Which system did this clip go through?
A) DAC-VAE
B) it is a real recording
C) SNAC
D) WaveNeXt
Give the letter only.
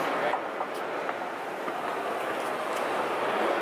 B